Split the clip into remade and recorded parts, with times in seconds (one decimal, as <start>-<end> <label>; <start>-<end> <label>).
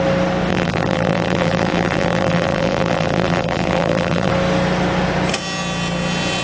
0.0-0.5 recorded; 0.5-4.3 remade; 4.3-6.4 recorded